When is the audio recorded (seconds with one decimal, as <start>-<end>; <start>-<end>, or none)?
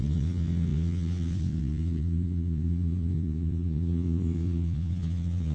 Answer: none